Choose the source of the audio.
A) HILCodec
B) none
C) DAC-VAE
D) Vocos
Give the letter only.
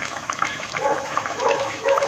C